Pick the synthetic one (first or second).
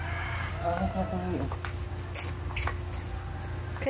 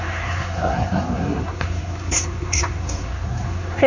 second